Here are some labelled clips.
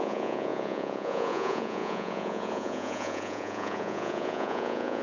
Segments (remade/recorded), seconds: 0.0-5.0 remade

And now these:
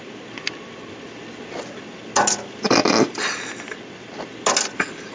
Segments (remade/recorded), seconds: 0.0-5.1 recorded

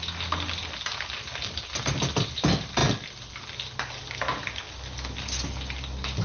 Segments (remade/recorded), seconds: 0.0-6.2 recorded

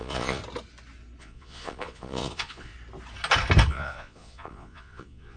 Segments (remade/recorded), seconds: 0.0-0.4 remade; 0.4-1.2 recorded; 1.2-2.7 remade; 2.7-3.7 recorded; 3.7-5.4 remade